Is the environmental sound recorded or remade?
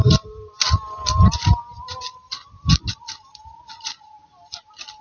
recorded